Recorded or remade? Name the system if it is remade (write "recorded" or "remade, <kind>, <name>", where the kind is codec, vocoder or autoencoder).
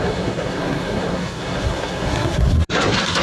remade, codec, SNAC